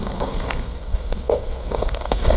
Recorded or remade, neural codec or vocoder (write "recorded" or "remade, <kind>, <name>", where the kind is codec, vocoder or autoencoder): remade, codec, SNAC